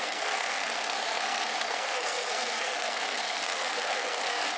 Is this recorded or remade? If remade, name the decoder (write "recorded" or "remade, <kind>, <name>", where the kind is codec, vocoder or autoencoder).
remade, codec, SNAC